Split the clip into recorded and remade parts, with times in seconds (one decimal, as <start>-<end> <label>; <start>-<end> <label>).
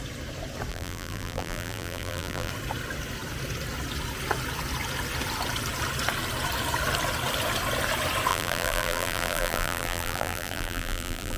0.0-0.7 recorded; 0.7-2.5 remade; 2.5-8.3 recorded; 8.3-11.4 remade